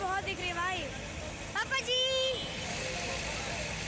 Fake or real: real